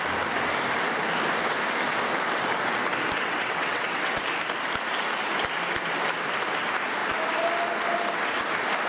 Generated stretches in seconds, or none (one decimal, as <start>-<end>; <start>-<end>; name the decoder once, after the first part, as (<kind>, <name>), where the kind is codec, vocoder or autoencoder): 3.2-4.2 (vocoder, WaveNeXt)